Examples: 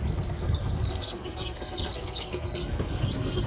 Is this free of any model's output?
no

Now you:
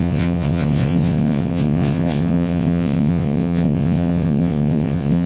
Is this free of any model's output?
no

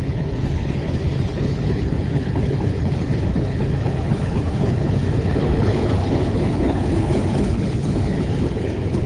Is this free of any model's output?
no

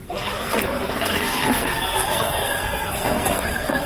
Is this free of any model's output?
no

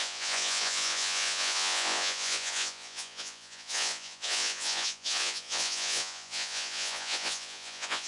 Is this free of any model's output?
no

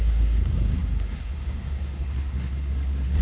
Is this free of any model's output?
no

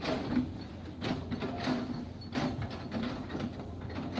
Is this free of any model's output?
yes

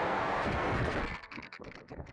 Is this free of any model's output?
no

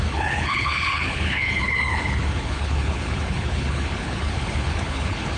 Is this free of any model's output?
no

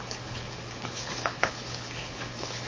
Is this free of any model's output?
no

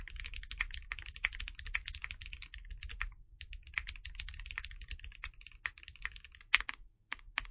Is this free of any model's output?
yes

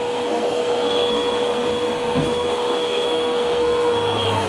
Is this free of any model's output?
no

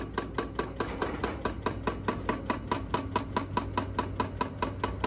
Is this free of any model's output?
yes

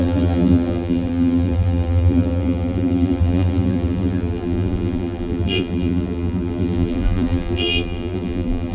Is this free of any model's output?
no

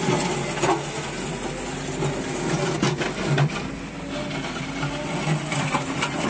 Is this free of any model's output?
yes